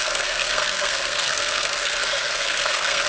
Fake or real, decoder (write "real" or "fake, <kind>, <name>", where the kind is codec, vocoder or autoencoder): fake, codec, SNAC